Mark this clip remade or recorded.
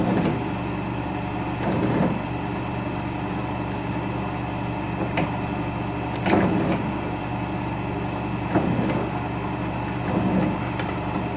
recorded